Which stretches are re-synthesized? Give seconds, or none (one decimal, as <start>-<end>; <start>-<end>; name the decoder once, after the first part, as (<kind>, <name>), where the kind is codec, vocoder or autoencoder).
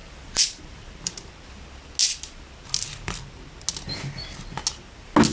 0.0-1.3 (vocoder, BigVGAN v2)